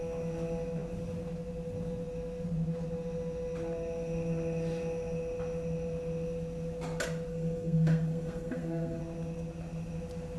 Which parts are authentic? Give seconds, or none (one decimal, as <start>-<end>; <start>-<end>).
0.0-7.3; 9.0-10.4